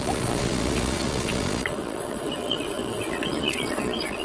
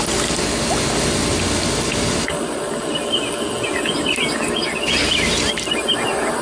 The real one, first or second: second